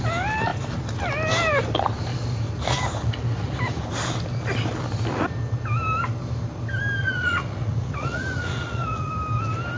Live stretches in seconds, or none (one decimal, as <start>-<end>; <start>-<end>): 0.0-7.0; 9.1-9.8